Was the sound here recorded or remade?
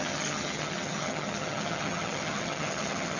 remade